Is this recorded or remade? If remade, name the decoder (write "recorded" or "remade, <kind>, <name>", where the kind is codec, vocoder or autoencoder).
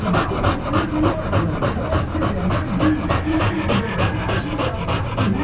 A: recorded